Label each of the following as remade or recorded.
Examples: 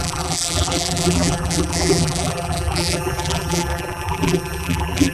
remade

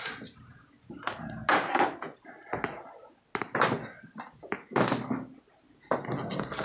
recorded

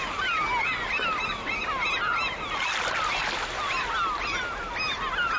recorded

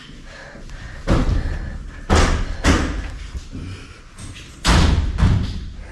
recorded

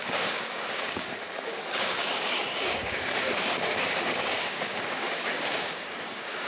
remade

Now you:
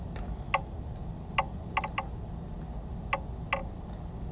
recorded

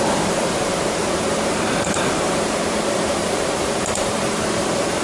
remade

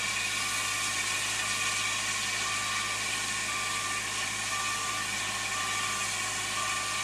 recorded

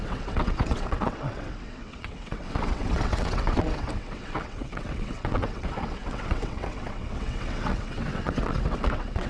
remade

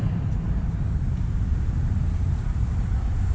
remade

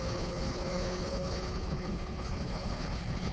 remade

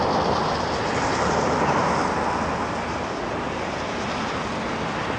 recorded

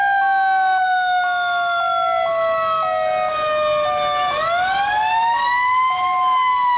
recorded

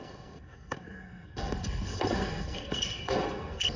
remade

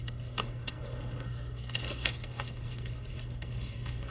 remade